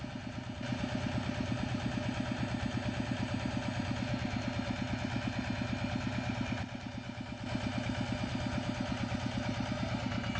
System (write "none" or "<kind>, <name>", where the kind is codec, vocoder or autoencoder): none